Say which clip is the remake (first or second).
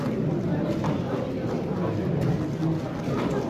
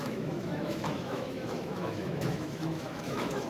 second